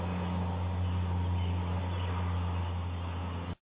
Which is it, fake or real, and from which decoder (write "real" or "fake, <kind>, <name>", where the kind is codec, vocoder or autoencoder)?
real